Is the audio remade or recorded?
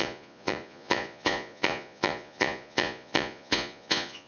remade